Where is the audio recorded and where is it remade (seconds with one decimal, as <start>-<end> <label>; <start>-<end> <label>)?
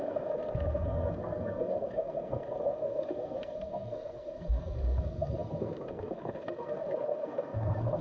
0.0-8.0 remade